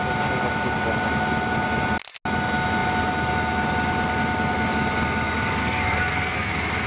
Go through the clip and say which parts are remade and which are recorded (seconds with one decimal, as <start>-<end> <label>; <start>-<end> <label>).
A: 0.0-5.6 recorded; 5.6-6.5 remade; 6.5-6.9 recorded